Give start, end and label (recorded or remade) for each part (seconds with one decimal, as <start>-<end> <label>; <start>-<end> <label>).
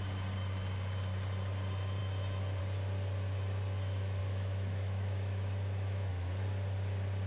0.0-4.2 recorded; 4.2-6.1 remade; 6.1-7.3 recorded